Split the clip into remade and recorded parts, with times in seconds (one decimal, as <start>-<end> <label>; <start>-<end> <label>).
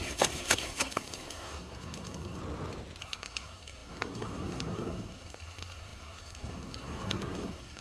0.0-2.4 remade; 2.4-3.0 recorded; 3.0-7.8 remade